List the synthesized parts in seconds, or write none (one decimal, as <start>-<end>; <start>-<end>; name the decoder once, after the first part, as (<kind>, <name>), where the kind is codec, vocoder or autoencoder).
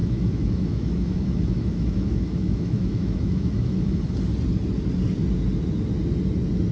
0.0-4.0 (autoencoder, DAC-VAE)